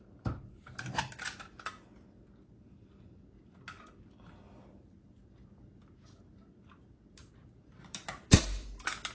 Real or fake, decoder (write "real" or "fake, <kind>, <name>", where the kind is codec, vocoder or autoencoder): real